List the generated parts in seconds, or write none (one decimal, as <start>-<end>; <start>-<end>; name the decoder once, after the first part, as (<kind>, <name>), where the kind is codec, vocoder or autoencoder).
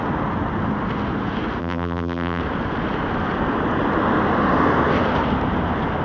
1.6-2.4 (vocoder, BigVGAN v2)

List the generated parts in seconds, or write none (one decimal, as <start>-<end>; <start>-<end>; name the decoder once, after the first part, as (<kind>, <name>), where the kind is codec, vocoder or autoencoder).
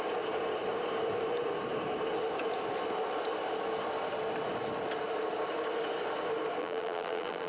6.6-7.5 (vocoder, BigVGAN v2)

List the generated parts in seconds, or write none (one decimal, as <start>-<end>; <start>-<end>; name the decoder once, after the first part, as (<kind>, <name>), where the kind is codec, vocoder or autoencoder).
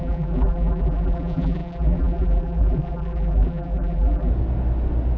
0.0-4.3 (vocoder, BigVGAN v2)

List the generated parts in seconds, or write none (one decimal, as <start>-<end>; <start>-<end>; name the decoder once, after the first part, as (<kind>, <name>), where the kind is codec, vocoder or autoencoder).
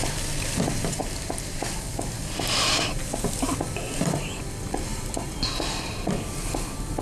4.9-5.4 (vocoder, BigVGAN v2)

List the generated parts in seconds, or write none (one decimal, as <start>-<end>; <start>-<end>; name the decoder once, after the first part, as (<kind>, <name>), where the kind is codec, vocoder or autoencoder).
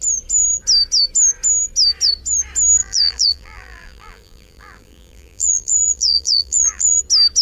2.8-7.0 (vocoder, BigVGAN v2)